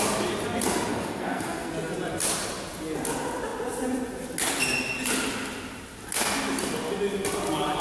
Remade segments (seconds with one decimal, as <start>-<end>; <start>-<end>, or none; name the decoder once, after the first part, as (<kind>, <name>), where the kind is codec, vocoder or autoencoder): 0.9-1.7 (codec, SNAC)